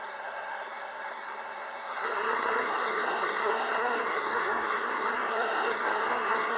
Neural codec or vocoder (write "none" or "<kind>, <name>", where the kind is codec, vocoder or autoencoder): codec, SNAC